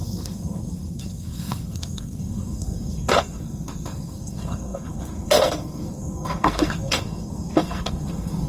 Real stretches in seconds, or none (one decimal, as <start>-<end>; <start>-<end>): none

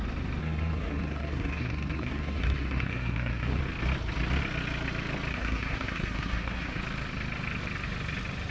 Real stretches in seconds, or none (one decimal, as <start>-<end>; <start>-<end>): 0.0-0.4; 3.6-5.3; 6.8-8.5

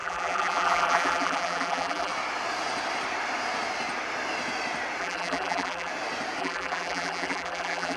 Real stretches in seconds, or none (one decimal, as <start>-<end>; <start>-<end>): 2.1-5.0; 5.9-6.4

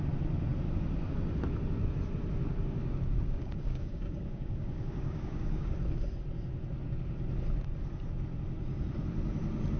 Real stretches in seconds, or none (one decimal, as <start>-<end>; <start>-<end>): 0.0-3.1; 5.7-9.8